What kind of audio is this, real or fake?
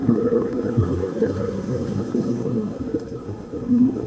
fake